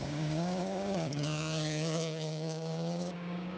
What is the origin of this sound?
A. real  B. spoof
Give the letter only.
B